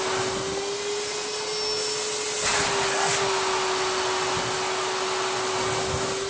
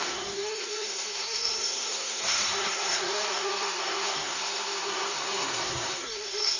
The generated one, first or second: second